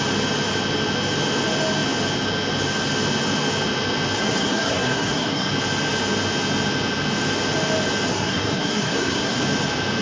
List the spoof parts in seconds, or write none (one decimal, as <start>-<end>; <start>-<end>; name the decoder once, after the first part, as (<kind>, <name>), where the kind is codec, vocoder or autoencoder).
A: 4.2-5.5 (codec, SNAC); 8.1-9.4